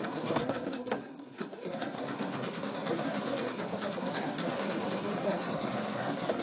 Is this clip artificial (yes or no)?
yes